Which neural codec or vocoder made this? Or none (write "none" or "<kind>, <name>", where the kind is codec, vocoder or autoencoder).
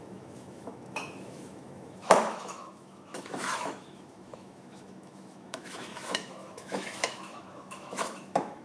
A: autoencoder, DAC-VAE